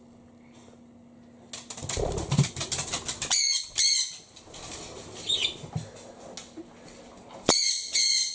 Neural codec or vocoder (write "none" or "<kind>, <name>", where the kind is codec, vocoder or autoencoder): none